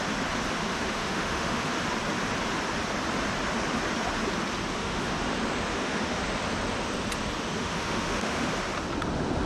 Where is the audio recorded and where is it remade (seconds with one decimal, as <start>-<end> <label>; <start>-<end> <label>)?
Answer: 0.0-0.7 recorded; 0.7-1.7 remade; 1.7-4.7 recorded; 4.7-5.3 remade; 5.3-5.7 recorded; 5.7-6.2 remade; 6.2-7.6 recorded; 7.6-8.5 remade; 8.5-9.5 recorded